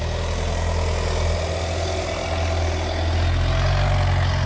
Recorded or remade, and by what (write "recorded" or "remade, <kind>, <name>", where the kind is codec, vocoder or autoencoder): recorded